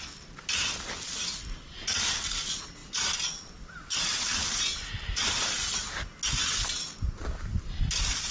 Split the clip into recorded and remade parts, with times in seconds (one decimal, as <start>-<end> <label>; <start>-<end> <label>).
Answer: 0.0-8.3 recorded